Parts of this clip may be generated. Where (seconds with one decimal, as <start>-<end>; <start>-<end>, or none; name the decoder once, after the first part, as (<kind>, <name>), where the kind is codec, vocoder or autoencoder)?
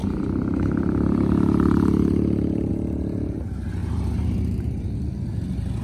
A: 0.0-2.7 (vocoder, BigVGAN v2); 3.8-4.9